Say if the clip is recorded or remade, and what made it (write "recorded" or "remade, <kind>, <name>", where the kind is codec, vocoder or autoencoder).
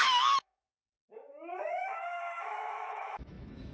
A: remade, autoencoder, DAC-VAE